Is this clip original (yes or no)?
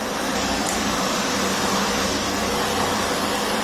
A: no